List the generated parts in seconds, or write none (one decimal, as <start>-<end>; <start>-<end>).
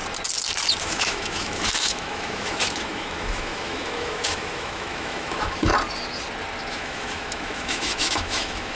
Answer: 0.8-5.7; 6.7-8.8